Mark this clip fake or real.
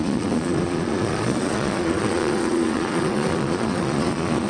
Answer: fake